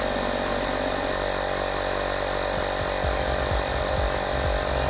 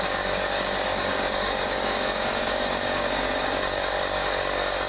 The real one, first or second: first